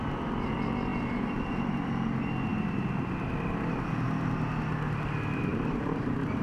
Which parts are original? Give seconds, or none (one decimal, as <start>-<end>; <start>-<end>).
0.0-0.9; 1.9-5.5